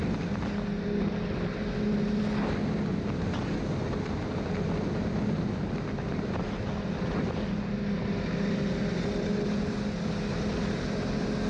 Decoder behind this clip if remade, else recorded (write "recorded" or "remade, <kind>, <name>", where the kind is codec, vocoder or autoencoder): recorded